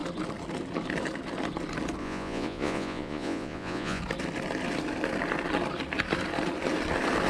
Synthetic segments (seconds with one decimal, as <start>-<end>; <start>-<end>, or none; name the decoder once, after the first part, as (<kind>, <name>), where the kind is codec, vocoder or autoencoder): 2.0-4.0 (vocoder, Vocos)